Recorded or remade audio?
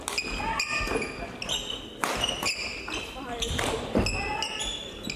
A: recorded